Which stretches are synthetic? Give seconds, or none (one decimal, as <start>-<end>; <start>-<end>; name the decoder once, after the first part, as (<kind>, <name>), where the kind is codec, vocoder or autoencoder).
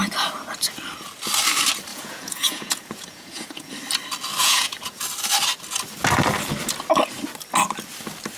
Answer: 1.9-3.7 (vocoder, Vocos); 4.4-5.0